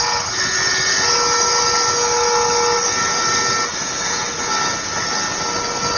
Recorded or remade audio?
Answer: recorded